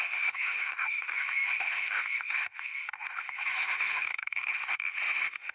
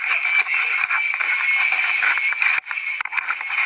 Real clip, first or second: second